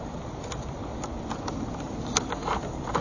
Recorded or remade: recorded